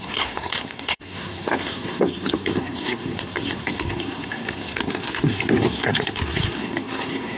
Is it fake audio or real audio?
fake